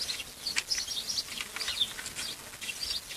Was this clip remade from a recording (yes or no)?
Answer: no